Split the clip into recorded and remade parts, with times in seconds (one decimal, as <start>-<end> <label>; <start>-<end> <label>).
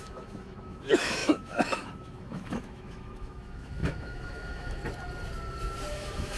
0.0-4.8 remade; 4.8-5.9 recorded; 5.9-6.4 remade